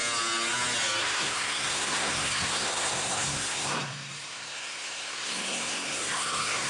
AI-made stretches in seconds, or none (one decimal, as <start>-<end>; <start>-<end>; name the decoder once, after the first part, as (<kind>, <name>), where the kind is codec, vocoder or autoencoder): 1.0-6.7 (codec, SNAC)